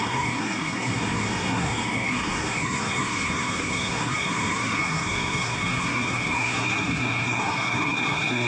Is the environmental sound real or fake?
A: fake